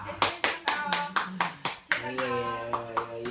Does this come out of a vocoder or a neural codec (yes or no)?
no